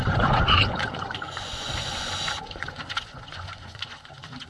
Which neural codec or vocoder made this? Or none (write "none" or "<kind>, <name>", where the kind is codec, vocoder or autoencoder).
vocoder, Vocos